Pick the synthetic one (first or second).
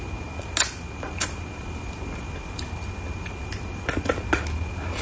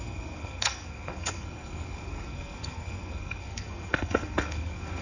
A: second